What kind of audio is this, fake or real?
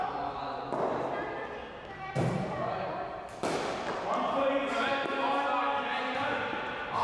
real